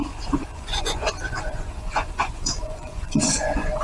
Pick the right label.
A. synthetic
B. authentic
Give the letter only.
A